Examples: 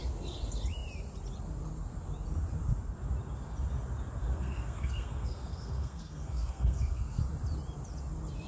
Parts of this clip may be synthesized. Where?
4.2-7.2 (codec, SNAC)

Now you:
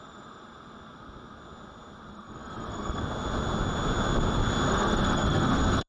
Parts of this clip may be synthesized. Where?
2.1-3.0 (codec, SNAC); 4.7-5.9

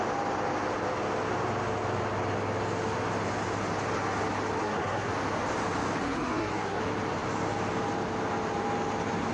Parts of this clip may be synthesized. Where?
4.6-5.1 (codec, SNAC); 6.0-6.8

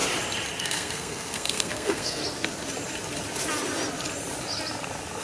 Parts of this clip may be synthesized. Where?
0.6-2.2 (codec, SNAC)

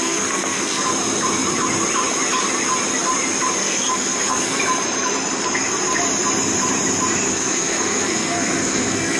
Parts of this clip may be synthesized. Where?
0.0-0.9 (codec, SNAC); 3.6-4.6; 7.3-9.2

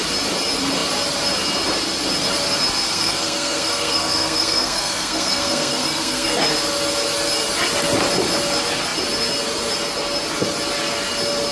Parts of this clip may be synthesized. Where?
2.9-6.4 (codec, SNAC)

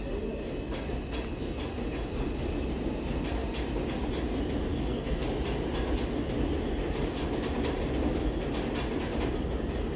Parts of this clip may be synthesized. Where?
4.7-5.2 (codec, SNAC)